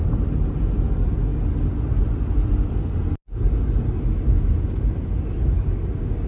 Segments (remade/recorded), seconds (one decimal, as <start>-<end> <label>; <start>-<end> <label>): 0.0-6.3 recorded